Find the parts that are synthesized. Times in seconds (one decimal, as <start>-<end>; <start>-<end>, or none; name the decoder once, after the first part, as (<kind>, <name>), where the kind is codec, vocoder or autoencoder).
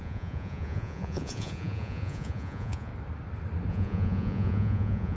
0.0-2.9 (vocoder, Vocos); 3.7-5.2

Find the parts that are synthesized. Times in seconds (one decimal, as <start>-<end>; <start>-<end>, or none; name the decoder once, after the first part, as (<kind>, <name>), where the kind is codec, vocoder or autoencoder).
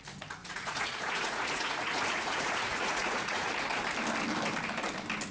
0.4-3.5 (vocoder, Vocos)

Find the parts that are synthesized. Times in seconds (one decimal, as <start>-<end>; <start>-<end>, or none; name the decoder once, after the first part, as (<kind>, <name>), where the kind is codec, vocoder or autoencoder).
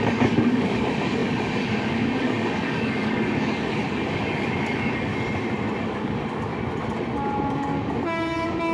0.0-5.1 (codec, DAC); 5.8-6.5; 7.5-8.7